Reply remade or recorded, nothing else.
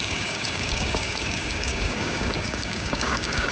remade